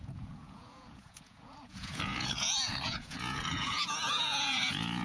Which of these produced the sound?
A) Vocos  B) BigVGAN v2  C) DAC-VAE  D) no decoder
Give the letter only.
A